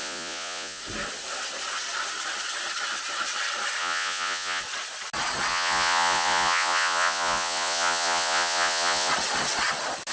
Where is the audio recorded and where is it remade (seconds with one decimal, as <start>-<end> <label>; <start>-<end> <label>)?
0.0-0.8 remade; 0.8-3.8 recorded; 3.8-4.6 remade; 4.6-5.5 recorded; 5.5-9.1 remade; 9.1-10.1 recorded